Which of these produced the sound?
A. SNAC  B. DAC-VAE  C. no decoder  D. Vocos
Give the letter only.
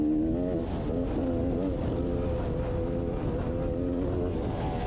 C